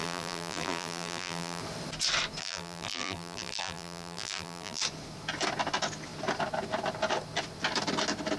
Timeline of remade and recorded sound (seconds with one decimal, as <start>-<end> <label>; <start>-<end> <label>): 0.0-1.6 remade; 1.6-2.4 recorded; 2.4-4.8 remade; 4.8-8.4 recorded